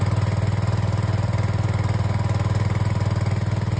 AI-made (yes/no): no